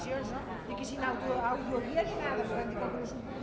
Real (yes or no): yes